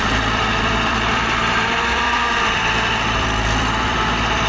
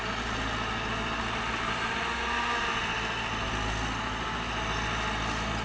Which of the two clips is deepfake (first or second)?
first